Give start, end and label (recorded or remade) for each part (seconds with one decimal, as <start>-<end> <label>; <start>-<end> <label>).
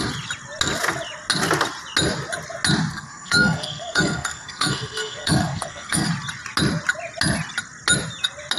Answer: 0.0-2.9 recorded; 2.9-6.1 remade; 6.1-8.6 recorded